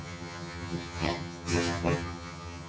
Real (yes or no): no